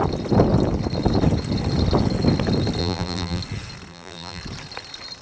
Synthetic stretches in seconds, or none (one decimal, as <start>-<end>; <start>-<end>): 2.8-3.4; 3.9-4.4